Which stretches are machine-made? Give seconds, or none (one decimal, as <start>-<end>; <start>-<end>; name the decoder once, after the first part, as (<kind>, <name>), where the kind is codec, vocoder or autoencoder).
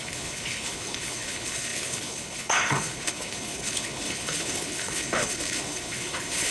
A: 0.0-6.5 (codec, HILCodec)